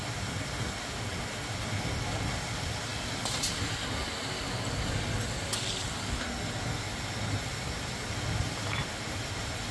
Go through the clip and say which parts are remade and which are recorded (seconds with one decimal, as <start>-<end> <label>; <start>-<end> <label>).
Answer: 0.0-9.7 recorded